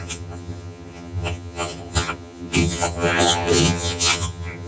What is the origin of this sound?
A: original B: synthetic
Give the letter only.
B